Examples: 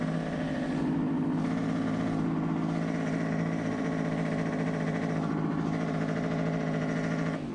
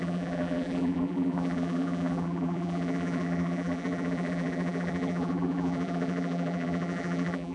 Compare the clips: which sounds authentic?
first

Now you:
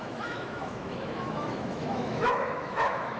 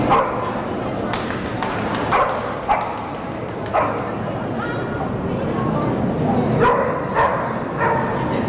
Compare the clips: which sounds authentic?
second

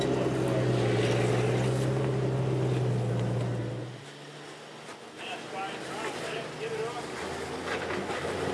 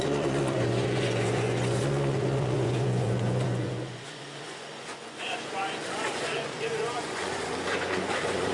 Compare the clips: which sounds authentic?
first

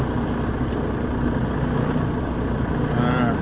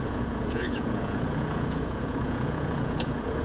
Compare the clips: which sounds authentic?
first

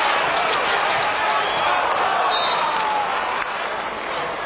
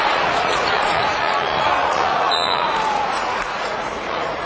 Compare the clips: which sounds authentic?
first